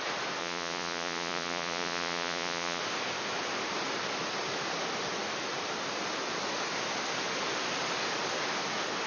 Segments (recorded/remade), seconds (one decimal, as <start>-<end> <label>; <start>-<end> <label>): 0.0-0.4 recorded; 0.4-2.8 remade; 2.8-9.1 recorded